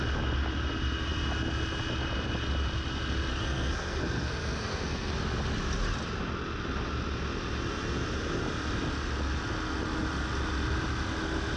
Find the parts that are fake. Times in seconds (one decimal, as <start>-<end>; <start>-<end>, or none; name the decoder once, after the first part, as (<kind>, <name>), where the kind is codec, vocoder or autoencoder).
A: 3.3-5.1 (codec, SNAC)